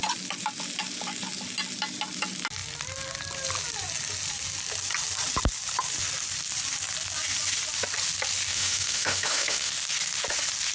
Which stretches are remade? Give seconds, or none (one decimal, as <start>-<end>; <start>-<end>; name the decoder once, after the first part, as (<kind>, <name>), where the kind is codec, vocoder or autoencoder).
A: 8.5-9.7 (autoencoder, DAC-VAE)